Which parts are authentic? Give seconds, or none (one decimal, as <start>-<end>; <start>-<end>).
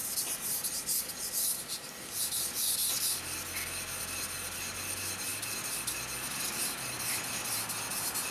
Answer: 0.0-1.5; 2.2-8.3